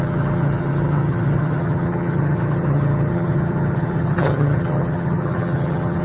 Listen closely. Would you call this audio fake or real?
fake